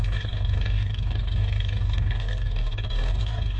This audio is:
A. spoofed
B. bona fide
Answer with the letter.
A